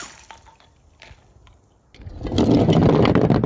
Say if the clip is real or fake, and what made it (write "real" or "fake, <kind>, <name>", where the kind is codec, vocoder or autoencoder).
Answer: real